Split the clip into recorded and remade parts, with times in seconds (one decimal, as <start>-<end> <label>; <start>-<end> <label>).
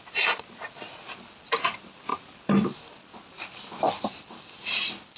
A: 0.0-5.2 recorded